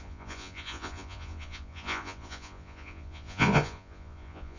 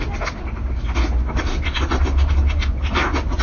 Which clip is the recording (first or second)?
second